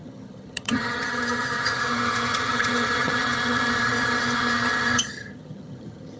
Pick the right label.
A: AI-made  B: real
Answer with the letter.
A